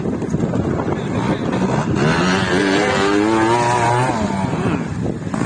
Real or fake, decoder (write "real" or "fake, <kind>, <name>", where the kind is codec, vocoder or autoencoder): real